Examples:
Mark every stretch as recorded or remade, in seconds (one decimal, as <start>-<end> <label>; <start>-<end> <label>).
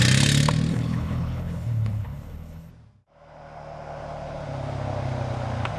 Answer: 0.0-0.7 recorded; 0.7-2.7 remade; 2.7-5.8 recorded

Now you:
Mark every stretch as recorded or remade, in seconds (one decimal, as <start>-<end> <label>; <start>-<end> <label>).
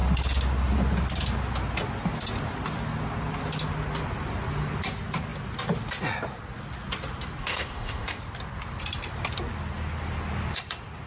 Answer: 0.0-7.4 recorded; 7.4-8.2 remade; 8.2-11.1 recorded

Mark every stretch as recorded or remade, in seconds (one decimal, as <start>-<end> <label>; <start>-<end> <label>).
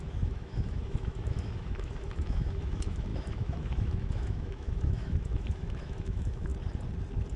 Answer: 0.0-6.5 remade; 6.5-7.4 recorded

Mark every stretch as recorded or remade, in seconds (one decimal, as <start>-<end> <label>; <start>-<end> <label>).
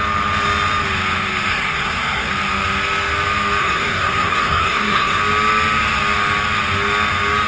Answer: 0.0-1.5 recorded; 1.5-2.3 remade; 2.3-3.6 recorded; 3.6-5.2 remade; 5.2-7.5 recorded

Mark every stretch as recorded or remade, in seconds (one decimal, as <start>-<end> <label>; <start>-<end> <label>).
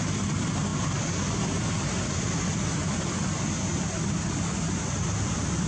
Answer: 0.0-5.7 recorded